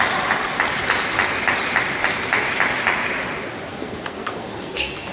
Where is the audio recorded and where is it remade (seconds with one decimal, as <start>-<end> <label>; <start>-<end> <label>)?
0.0-3.7 recorded; 3.7-5.1 remade